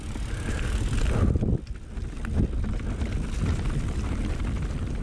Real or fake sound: real